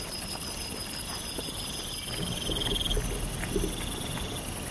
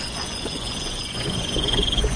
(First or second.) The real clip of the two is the first